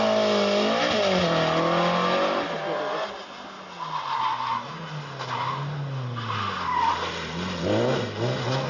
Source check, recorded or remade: recorded